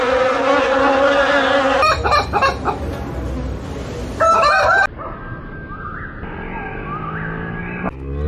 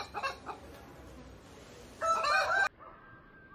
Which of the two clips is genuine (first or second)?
first